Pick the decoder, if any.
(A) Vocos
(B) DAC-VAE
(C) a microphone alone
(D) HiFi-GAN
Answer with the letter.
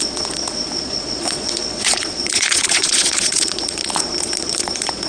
A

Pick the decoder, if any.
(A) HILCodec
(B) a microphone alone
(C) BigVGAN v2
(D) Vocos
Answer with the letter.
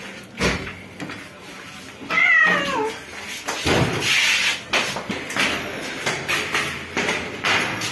B